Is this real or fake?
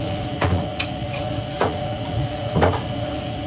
fake